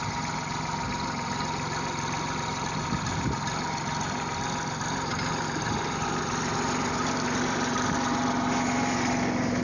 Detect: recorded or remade recorded